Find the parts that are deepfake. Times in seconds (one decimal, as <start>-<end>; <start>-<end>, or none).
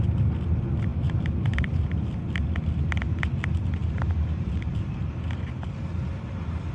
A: 0.9-2.1; 3.8-5.1